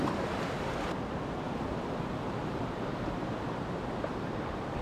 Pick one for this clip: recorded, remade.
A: remade